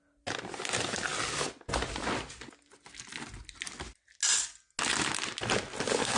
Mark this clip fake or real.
real